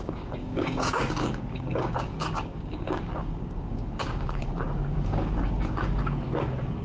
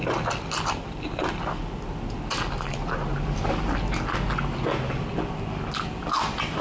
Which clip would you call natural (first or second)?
second